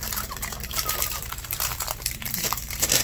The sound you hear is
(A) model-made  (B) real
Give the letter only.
A